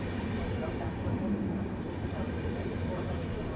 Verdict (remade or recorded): recorded